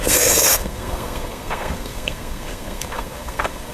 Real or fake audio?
fake